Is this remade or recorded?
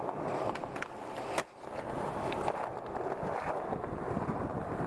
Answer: recorded